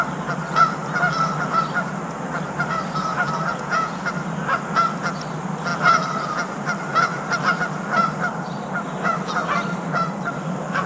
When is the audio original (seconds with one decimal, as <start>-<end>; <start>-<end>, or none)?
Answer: 0.0-3.5; 4.1-10.9